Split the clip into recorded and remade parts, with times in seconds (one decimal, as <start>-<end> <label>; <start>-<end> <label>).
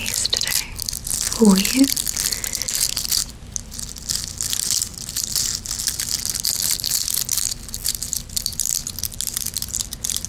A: 0.0-3.2 recorded; 3.2-4.1 remade; 4.1-8.1 recorded; 8.1-8.7 remade; 8.7-10.3 recorded